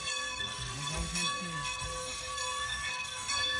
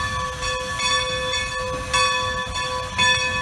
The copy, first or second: first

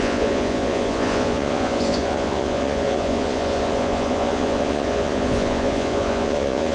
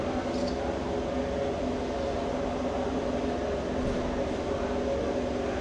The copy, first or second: first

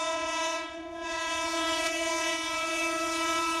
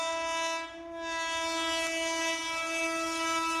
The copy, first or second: first